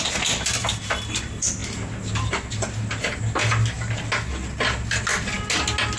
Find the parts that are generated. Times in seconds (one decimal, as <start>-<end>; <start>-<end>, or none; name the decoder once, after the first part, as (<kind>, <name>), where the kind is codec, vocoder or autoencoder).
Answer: none